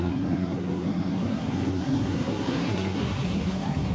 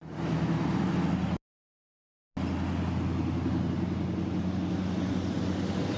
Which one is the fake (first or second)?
first